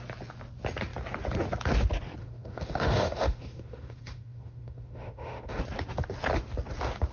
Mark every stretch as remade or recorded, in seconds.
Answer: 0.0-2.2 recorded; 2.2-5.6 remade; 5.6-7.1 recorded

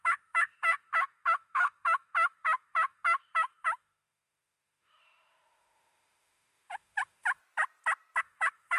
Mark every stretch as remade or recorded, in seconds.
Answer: 0.0-7.4 remade; 7.4-8.2 recorded; 8.2-8.8 remade

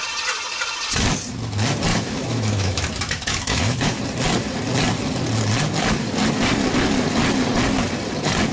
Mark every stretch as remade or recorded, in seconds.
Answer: 0.0-1.9 recorded; 1.9-4.0 remade; 4.0-8.5 recorded

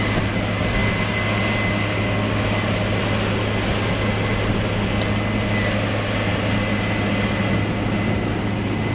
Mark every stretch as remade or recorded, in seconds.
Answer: 0.0-8.9 recorded

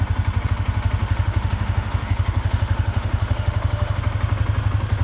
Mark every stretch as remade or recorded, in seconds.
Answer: 0.0-1.0 recorded; 1.0-4.0 remade; 4.0-5.0 recorded

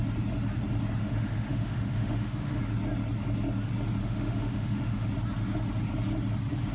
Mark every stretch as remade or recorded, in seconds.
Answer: 0.0-1.0 recorded; 1.0-2.6 remade; 2.6-4.0 recorded; 4.0-5.1 remade; 5.1-6.7 recorded